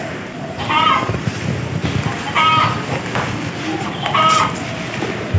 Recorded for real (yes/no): yes